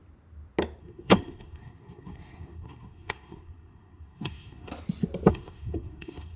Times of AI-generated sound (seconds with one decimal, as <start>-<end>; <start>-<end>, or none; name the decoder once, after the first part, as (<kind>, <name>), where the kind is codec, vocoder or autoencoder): 0.8-4.7 (codec, SNAC); 5.3-6.4

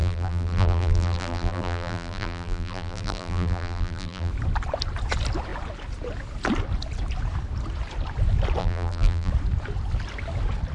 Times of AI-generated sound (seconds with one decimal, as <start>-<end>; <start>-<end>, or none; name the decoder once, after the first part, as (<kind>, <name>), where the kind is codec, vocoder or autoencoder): 0.0-4.3 (vocoder, BigVGAN v2); 8.6-9.3

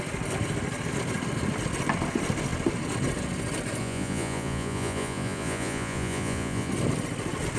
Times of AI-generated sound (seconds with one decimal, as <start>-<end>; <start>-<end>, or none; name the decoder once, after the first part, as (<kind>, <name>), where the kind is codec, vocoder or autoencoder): 3.8-6.7 (vocoder, Vocos)

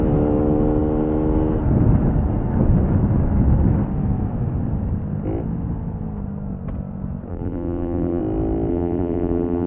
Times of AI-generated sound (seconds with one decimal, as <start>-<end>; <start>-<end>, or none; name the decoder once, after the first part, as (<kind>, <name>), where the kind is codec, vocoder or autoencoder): 7.3-8.2 (vocoder, BigVGAN v2); 8.7-9.7